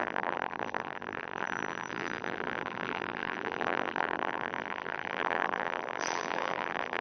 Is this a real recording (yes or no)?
no